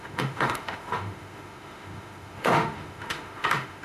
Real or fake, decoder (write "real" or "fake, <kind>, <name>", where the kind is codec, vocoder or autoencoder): fake, autoencoder, DAC-VAE